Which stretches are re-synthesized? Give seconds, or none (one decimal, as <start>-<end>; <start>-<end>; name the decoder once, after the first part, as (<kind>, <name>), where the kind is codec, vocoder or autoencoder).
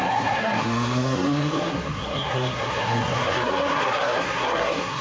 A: 0.0-5.0 (codec, SNAC)